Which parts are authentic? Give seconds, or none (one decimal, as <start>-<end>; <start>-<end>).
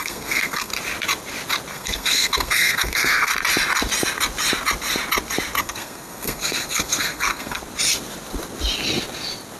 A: 0.7-1.7; 3.3-5.6; 7.6-9.6